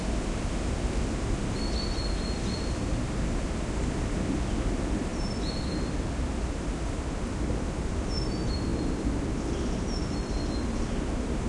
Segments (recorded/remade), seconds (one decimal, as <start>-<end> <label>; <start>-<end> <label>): 0.0-2.8 recorded; 2.8-3.6 remade; 3.6-5.1 recorded; 5.1-5.8 remade; 5.8-11.5 recorded

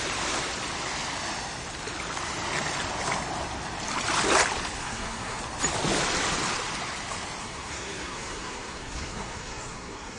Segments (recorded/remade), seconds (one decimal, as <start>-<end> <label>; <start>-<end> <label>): 0.0-4.8 recorded; 4.8-5.4 remade; 5.4-7.4 recorded; 7.4-10.2 remade

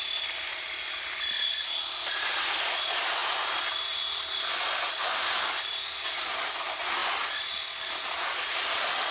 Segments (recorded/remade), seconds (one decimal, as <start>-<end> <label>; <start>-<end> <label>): 0.0-9.1 recorded

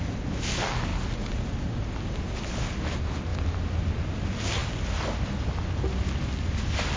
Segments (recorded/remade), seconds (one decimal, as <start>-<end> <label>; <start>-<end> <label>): 0.0-7.0 recorded

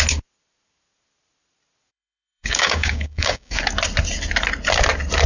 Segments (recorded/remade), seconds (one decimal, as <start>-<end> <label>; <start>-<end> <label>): 0.0-1.9 recorded; 1.9-3.6 remade; 3.6-5.3 recorded